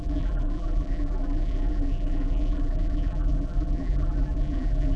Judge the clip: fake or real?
fake